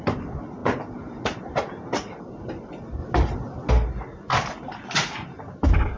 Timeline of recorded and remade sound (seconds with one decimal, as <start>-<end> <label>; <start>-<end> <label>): 0.0-6.0 recorded